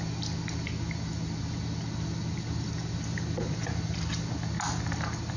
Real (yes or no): yes